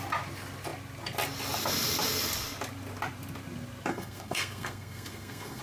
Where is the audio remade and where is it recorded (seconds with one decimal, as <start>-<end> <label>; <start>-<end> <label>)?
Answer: 0.0-3.9 recorded; 3.9-5.6 remade